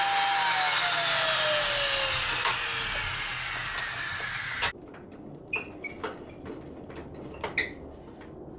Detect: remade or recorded recorded